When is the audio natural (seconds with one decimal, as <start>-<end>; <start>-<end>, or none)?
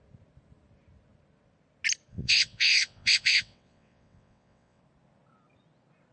0.0-2.1; 4.8-6.1